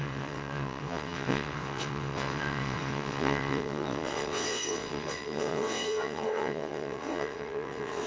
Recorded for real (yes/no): no